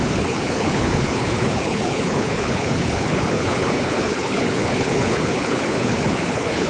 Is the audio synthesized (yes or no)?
yes